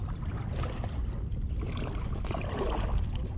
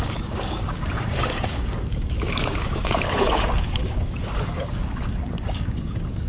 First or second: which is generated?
second